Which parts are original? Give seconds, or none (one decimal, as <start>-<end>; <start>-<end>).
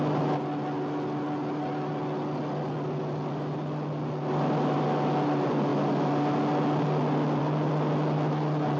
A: 0.0-8.8